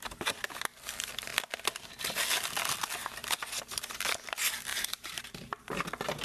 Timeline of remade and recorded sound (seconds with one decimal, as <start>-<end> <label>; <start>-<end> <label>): 0.0-4.7 recorded; 4.7-5.6 remade; 5.6-6.2 recorded